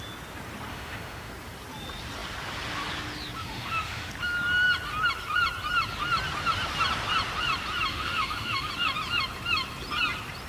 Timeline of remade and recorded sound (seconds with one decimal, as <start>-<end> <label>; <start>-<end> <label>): 0.0-0.7 recorded; 0.7-1.3 remade; 1.3-3.4 recorded; 3.4-4.1 remade; 4.1-7.9 recorded; 7.9-8.7 remade; 8.7-10.5 recorded